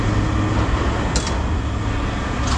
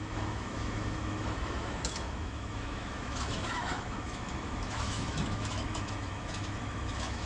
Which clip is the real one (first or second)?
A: first